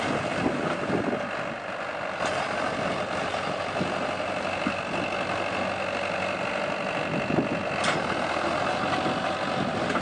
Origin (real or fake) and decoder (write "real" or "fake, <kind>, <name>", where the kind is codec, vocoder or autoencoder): real